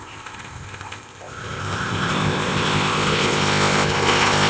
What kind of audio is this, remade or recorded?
remade